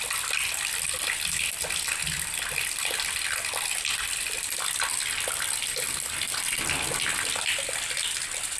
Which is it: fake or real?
real